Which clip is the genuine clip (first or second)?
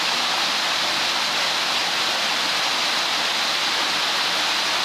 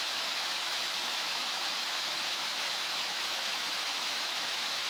first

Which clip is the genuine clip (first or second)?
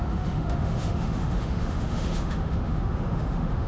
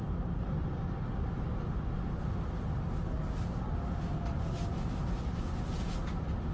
second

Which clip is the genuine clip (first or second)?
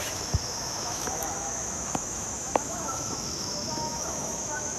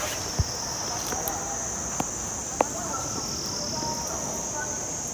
second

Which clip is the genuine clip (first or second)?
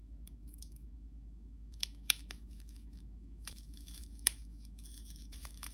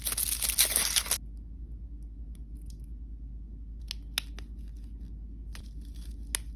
second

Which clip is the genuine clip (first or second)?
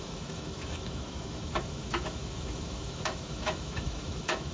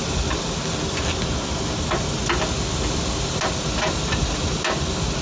second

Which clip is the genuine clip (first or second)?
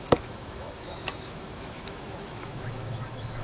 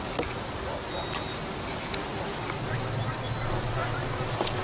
second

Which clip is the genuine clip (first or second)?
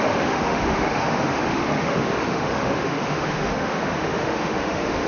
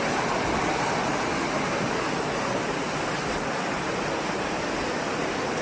second